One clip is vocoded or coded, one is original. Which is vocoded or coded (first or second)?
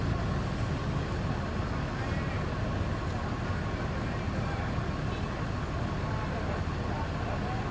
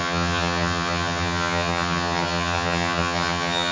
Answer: second